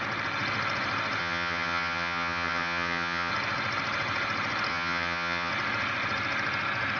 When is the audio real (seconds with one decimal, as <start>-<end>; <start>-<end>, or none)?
0.0-1.2; 3.3-4.7; 5.5-7.0